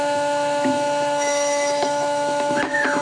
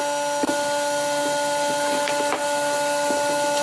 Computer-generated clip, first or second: first